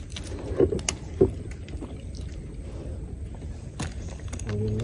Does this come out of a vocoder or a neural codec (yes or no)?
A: no